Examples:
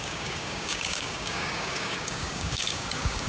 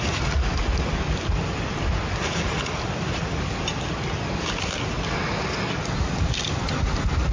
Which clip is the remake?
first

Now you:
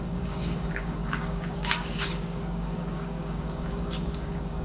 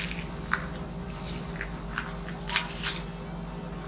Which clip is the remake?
first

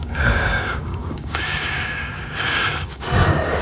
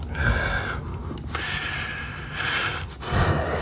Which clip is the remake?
first